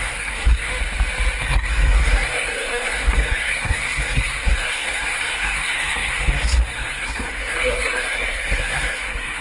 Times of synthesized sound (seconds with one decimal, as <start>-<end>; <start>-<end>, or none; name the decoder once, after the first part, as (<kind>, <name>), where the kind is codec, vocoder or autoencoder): 0.0-0.7 (codec, SNAC); 1.4-9.4